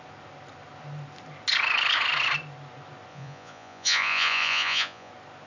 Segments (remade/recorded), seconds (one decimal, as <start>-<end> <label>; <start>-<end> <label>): 0.0-3.1 recorded; 3.1-5.1 remade; 5.1-5.5 recorded

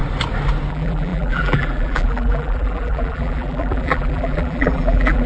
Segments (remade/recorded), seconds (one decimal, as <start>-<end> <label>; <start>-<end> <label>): 0.0-0.7 recorded; 0.7-5.3 remade

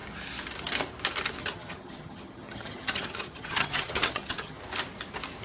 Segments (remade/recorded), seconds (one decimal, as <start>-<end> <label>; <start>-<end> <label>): 0.0-1.4 recorded; 1.4-4.6 remade; 4.6-5.4 recorded

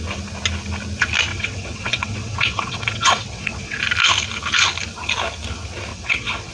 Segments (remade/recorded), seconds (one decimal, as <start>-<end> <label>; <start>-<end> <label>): 0.0-1.3 recorded; 1.3-3.8 remade; 3.8-5.9 recorded; 5.9-6.5 remade

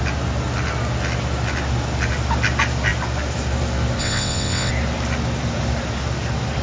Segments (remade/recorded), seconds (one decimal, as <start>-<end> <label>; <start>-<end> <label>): 0.0-4.0 recorded; 4.0-4.7 remade; 4.7-6.6 recorded

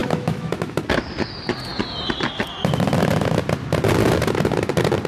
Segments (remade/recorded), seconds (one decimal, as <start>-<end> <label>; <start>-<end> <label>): 0.0-0.8 remade; 0.8-5.1 recorded

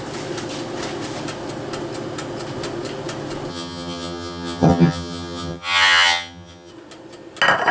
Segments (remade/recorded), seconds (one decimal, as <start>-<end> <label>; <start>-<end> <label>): 0.0-3.5 recorded; 3.5-6.7 remade; 6.7-7.7 recorded

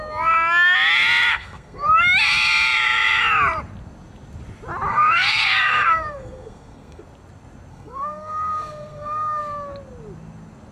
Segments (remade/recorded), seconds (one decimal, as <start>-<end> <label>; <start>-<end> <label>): 0.0-1.3 recorded; 1.3-1.9 remade; 1.9-4.9 recorded; 4.9-7.0 remade; 7.0-7.7 recorded; 7.7-9.4 remade; 9.4-10.7 recorded